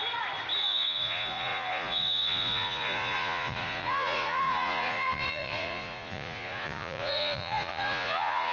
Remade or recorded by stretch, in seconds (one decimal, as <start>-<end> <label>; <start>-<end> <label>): 0.0-0.6 recorded; 0.6-8.5 remade